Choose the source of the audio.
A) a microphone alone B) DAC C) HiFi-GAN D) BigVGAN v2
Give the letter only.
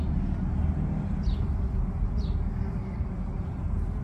A